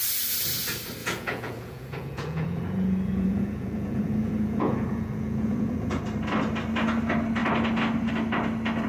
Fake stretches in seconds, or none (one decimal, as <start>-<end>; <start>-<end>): 1.0-6.0